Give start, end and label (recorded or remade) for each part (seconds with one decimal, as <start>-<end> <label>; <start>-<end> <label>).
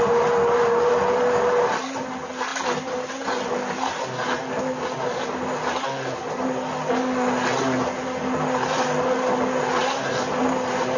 0.0-11.0 recorded